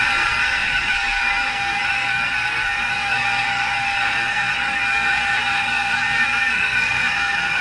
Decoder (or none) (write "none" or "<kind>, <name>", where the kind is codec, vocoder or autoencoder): codec, SNAC